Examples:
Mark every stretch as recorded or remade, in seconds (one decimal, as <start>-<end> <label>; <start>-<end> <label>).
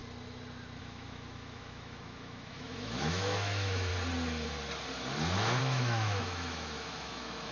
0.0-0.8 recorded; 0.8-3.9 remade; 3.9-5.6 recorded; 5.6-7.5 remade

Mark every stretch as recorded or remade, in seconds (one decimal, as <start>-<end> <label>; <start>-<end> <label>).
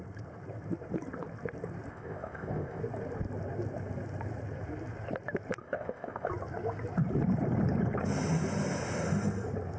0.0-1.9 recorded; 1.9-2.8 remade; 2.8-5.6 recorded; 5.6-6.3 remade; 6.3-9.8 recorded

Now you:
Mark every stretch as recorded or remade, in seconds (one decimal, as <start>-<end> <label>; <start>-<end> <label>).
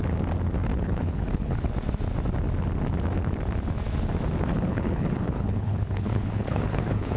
0.0-0.7 recorded; 0.7-1.7 remade; 1.7-4.5 recorded; 4.5-7.2 remade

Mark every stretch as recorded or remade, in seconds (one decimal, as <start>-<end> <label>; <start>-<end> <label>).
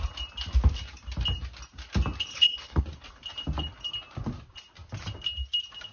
0.0-2.3 recorded; 2.3-2.8 remade; 2.8-5.9 recorded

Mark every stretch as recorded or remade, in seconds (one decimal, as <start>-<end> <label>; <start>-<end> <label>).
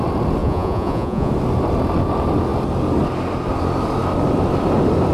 0.0-0.4 recorded; 0.4-1.3 remade; 1.3-5.1 recorded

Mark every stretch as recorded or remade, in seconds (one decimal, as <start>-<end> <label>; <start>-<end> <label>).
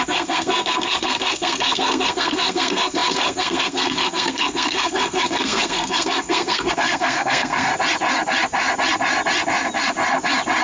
0.0-7.7 remade; 7.7-10.6 recorded